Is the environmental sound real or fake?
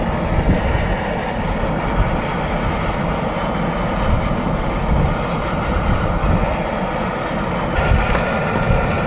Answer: real